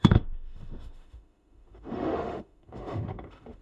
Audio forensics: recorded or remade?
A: remade